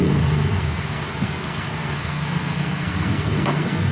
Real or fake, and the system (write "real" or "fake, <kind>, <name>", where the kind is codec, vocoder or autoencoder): fake, codec, SNAC